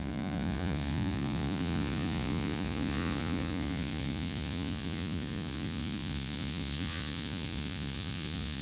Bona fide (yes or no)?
no